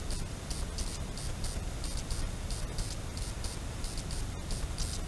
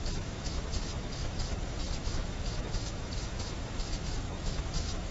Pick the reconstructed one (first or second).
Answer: second